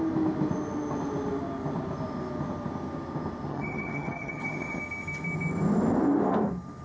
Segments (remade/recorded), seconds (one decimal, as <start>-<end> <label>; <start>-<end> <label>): 0.0-3.5 recorded; 3.5-4.8 remade; 4.8-6.8 recorded